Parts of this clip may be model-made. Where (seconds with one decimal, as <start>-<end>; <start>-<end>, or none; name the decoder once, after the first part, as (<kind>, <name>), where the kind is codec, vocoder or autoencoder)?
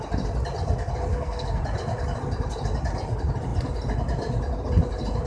1.1-1.6 (codec, SNAC)